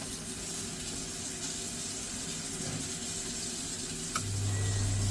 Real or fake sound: real